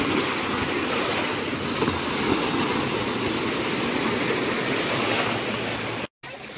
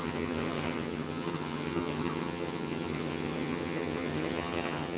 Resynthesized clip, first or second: second